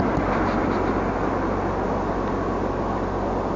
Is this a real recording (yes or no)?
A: yes